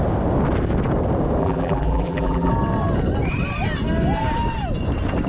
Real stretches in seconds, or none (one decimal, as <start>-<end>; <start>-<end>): 0.0-1.4; 2.5-5.3